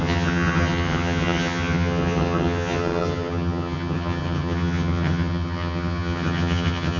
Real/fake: fake